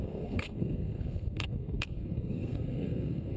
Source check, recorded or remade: remade